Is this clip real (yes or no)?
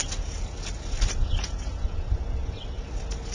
yes